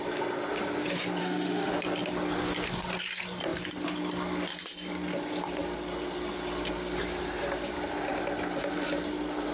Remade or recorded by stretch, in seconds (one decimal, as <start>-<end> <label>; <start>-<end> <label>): 0.0-1.2 recorded; 1.2-1.7 remade; 1.7-9.5 recorded

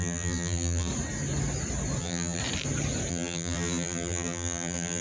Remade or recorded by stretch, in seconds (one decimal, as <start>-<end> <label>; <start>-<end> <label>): 0.0-0.9 remade; 0.9-2.0 recorded; 2.0-2.4 remade; 2.4-3.1 recorded; 3.1-5.0 remade

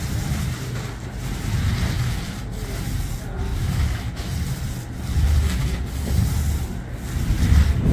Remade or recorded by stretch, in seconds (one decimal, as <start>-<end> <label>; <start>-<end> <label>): 0.0-3.5 recorded; 3.5-4.0 remade; 4.0-7.9 recorded